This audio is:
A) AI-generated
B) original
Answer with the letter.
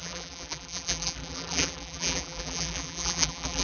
A